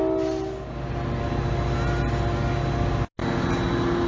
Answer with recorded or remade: recorded